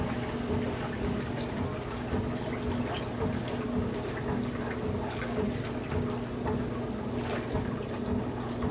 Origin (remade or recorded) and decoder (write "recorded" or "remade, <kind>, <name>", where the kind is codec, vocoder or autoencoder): recorded